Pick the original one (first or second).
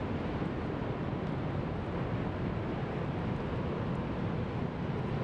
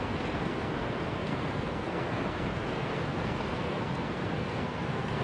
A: first